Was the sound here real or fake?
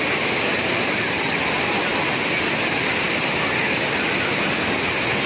real